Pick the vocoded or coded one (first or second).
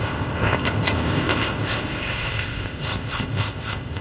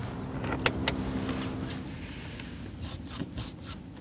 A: first